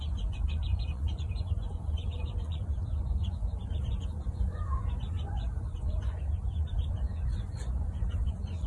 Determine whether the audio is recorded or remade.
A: remade